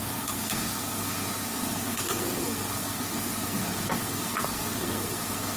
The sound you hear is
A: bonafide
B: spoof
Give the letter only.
B